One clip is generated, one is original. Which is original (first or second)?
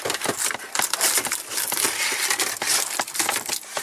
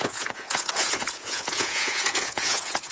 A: first